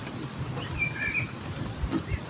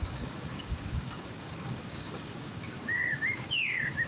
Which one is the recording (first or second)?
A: first